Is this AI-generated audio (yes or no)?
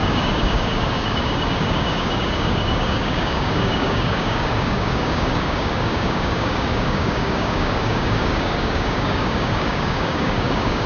yes